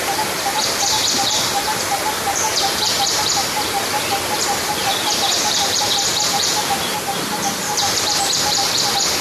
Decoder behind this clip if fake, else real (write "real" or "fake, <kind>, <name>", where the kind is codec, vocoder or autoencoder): fake, vocoder, BigVGAN v2